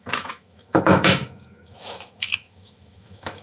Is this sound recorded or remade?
remade